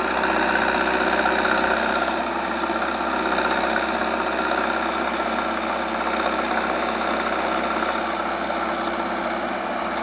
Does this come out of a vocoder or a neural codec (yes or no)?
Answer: no